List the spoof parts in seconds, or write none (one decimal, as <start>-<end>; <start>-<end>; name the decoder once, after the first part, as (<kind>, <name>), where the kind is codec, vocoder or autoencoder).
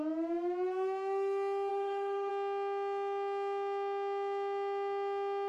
1.7-2.3 (codec, DAC)